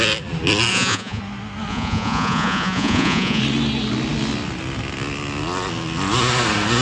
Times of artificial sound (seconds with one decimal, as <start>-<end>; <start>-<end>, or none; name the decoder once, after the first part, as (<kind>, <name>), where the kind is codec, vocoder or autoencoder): 0.7-1.2 (vocoder, Vocos); 1.7-3.4